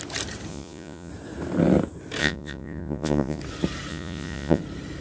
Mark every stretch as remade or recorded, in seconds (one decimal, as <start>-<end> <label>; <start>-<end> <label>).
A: 0.0-0.5 recorded; 0.5-1.1 remade; 1.1-2.2 recorded; 2.2-3.4 remade; 3.4-3.9 recorded; 3.9-4.6 remade; 4.6-5.0 recorded